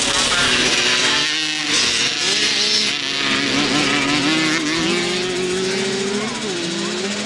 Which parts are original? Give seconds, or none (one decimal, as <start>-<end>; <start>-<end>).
0.0-7.3